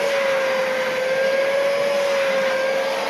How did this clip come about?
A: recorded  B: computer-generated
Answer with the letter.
A